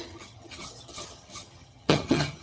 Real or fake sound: fake